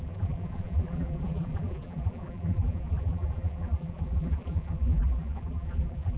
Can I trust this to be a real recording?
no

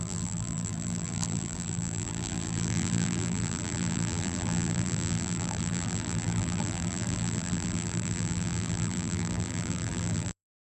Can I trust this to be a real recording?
no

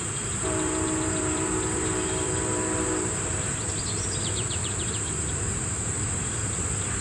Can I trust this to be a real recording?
no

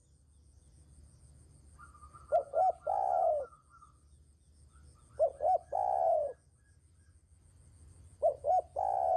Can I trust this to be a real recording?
yes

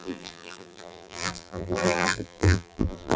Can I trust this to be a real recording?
no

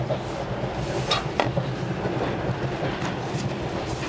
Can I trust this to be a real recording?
no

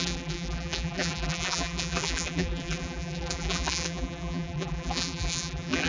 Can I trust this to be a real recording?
no